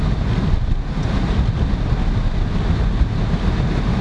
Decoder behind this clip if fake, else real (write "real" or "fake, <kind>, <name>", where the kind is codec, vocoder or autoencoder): real